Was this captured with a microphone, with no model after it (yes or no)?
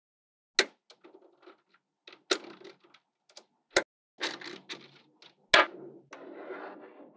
yes